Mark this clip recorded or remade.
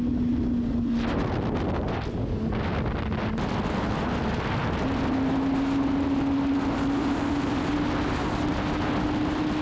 recorded